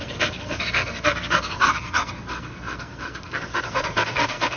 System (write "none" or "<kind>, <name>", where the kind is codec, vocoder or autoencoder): codec, SNAC